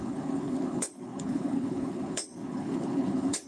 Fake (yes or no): yes